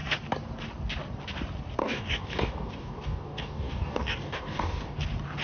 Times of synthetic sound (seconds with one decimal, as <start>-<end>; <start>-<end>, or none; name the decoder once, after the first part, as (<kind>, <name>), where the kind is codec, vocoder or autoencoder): 1.8-5.0 (codec, DAC)